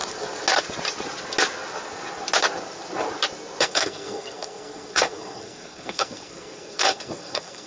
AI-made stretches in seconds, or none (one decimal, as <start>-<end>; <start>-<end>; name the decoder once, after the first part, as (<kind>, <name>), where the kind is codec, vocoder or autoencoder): 3.6-7.7 (codec, SNAC)